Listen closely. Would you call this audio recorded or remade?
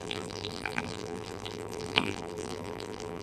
remade